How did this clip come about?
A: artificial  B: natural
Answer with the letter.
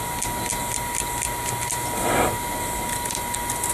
B